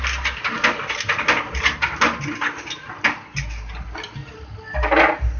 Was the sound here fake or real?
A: real